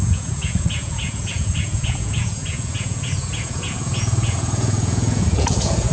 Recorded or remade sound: remade